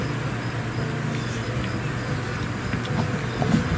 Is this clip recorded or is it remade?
recorded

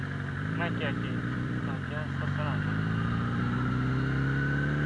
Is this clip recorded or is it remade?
recorded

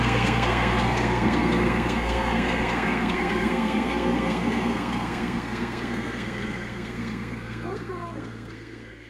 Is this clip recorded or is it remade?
remade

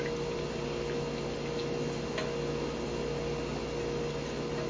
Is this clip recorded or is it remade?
recorded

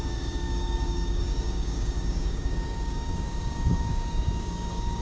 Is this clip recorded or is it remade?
remade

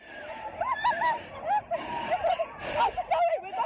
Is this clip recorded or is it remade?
recorded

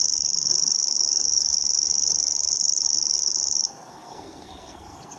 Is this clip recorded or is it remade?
remade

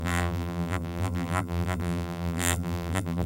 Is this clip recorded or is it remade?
remade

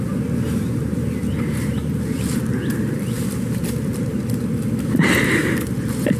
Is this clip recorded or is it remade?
recorded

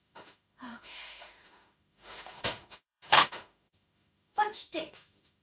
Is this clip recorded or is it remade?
remade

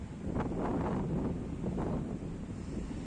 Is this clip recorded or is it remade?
recorded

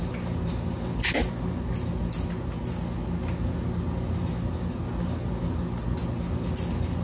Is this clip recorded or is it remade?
recorded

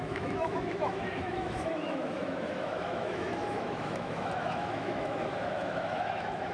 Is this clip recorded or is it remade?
remade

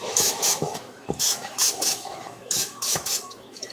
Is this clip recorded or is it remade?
remade